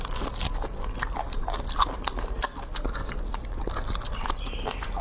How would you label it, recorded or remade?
recorded